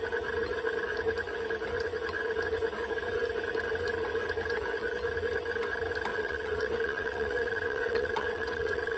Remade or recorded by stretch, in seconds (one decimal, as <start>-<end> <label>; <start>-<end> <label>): 0.0-6.1 recorded; 6.1-9.0 remade